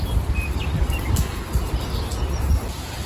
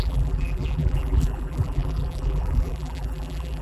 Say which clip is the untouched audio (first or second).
first